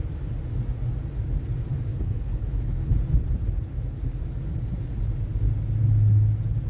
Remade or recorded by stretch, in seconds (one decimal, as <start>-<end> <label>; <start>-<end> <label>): 0.0-1.9 recorded; 1.9-2.9 remade; 2.9-6.7 recorded